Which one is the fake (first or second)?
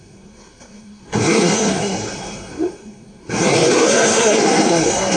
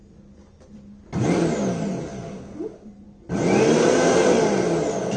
first